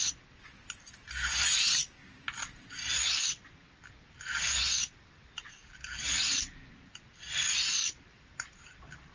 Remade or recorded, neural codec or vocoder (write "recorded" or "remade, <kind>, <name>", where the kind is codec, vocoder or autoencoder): recorded